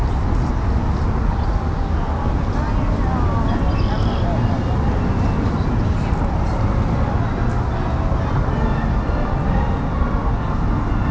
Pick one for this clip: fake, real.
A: real